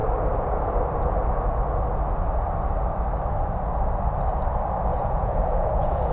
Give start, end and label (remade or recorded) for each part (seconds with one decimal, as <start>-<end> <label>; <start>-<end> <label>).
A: 0.0-4.9 recorded; 4.9-6.1 remade